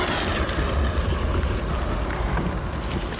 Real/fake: real